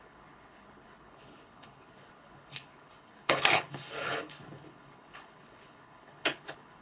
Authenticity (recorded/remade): remade